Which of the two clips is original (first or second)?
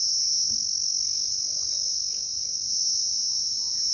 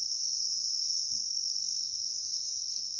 first